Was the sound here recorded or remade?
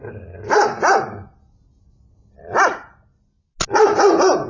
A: recorded